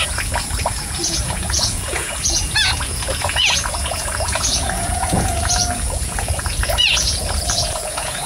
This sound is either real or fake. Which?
fake